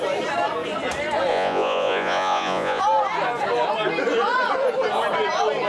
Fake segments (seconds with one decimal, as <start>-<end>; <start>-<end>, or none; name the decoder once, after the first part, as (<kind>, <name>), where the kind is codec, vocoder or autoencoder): 1.3-2.8 (vocoder, Vocos)